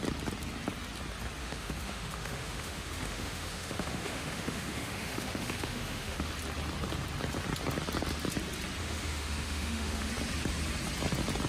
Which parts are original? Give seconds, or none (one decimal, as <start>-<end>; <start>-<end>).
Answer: 0.0-1.4; 6.3-8.8; 10.1-11.5